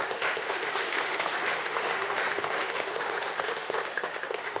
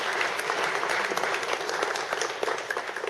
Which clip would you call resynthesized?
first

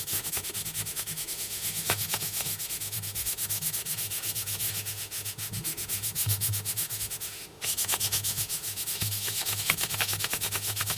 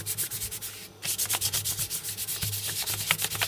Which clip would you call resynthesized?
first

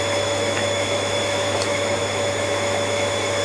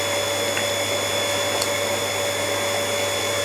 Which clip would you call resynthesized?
first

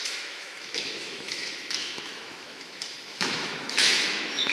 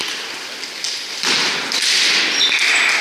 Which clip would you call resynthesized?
first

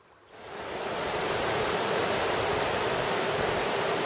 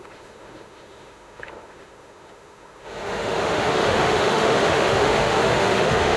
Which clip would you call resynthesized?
second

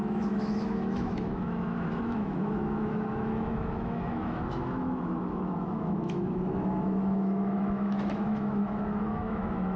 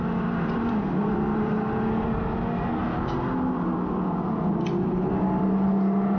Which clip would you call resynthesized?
first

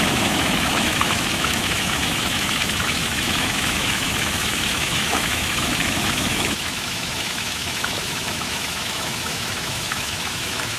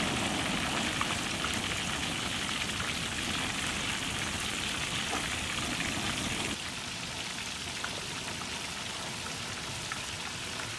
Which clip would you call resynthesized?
first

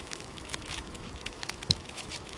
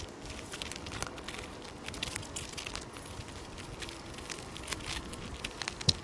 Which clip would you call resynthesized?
first